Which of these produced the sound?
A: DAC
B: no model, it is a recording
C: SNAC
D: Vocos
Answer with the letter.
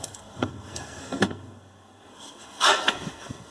C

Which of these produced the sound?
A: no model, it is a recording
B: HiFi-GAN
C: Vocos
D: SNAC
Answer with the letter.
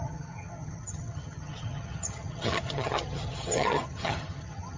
B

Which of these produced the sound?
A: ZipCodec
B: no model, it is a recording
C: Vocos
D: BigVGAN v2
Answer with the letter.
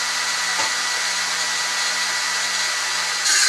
B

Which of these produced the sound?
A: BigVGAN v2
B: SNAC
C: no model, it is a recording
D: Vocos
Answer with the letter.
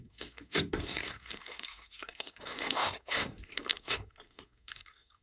B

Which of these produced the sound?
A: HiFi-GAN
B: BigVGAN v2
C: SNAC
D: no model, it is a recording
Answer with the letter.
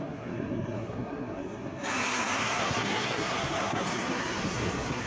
C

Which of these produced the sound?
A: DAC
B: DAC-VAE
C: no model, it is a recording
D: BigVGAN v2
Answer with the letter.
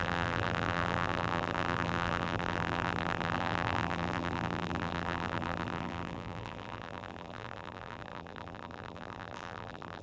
D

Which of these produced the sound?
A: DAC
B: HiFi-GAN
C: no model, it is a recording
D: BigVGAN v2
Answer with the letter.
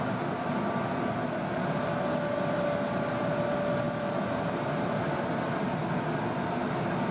C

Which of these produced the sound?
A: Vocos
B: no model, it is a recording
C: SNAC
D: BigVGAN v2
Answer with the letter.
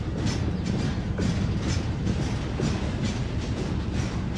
D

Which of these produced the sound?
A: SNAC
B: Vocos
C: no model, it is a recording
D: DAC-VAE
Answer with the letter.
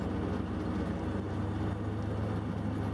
C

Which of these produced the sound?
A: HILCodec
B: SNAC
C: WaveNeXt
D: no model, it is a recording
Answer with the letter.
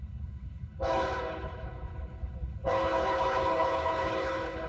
A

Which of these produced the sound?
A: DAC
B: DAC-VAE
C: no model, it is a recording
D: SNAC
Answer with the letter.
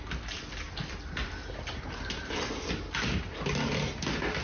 C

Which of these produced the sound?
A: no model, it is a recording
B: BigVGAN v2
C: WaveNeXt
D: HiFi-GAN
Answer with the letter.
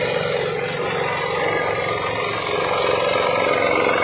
A